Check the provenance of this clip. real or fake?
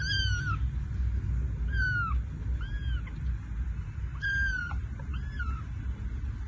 real